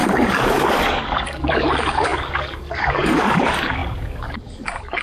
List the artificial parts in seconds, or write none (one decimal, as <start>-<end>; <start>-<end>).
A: 0.0-5.0